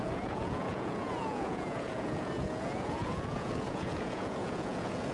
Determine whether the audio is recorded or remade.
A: remade